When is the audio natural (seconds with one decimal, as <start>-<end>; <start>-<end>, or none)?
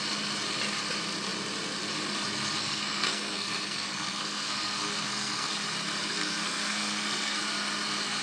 0.0-2.6; 5.5-6.0; 7.4-8.2